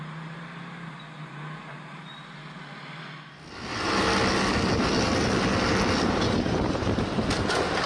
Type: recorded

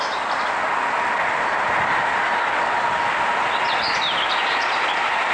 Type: recorded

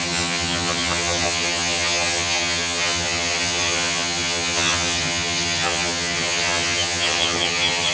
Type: remade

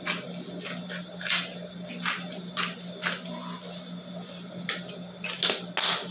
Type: recorded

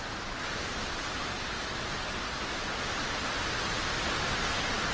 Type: recorded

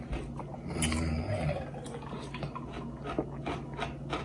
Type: recorded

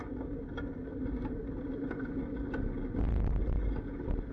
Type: recorded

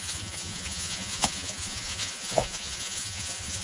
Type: remade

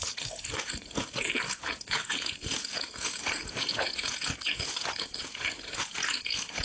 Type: remade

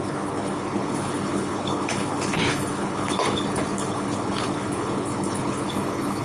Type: remade